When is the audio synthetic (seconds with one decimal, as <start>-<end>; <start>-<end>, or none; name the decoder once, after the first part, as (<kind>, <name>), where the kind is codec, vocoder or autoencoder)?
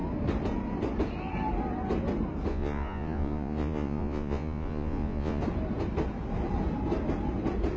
2.5-5.4 (vocoder, Vocos)